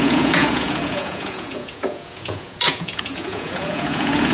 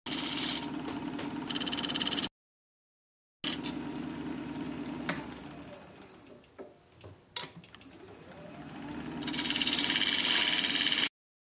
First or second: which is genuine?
second